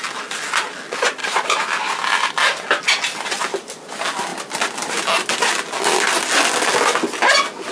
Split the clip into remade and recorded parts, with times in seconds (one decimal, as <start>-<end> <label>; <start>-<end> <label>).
0.0-1.2 recorded; 1.2-2.3 remade; 2.3-7.7 recorded